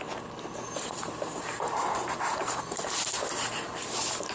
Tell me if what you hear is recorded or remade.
remade